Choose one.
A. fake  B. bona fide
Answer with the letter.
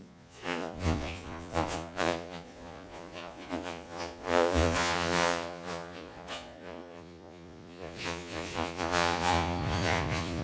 A